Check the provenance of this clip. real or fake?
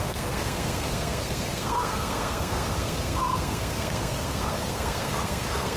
fake